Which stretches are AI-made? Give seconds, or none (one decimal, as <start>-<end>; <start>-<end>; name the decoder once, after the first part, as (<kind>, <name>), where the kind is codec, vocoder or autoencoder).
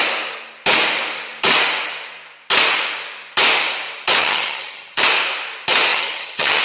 4.2-5.0 (vocoder, HiFi-GAN); 5.9-6.6